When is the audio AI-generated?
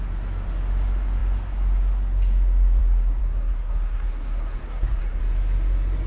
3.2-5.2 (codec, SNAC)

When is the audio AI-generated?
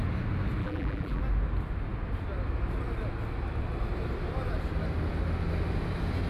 0.6-1.2 (vocoder, BigVGAN v2)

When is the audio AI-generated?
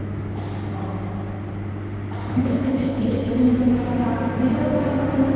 2.3-3.3 (codec, HILCodec)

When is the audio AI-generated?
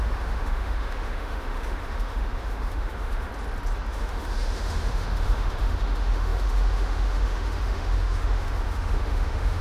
0.0-3.3 (autoencoder, DAC-VAE); 3.9-9.6